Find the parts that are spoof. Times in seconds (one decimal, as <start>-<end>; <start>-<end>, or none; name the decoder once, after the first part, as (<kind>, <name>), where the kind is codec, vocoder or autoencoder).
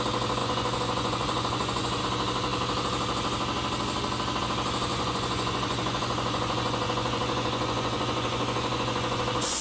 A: 0.4-2.0 (vocoder, Vocos); 4.9-9.6